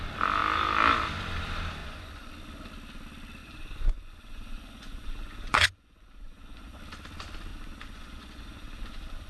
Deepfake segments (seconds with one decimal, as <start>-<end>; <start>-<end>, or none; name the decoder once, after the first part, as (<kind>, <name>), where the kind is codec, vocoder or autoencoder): 1.8-2.3 (vocoder, Vocos); 3.4-6.8; 7.5-9.3